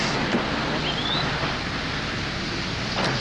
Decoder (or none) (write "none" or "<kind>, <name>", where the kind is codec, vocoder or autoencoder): none